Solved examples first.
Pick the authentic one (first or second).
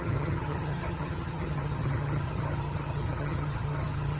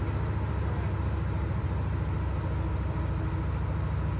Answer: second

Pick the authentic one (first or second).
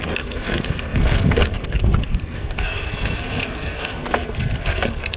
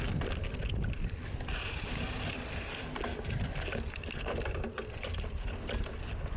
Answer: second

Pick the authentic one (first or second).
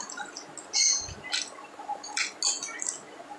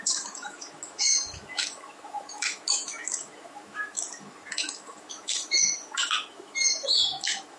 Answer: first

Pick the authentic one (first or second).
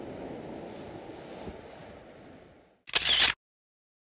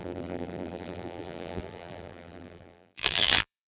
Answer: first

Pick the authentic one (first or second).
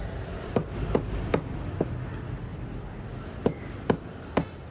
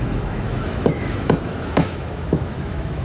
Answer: first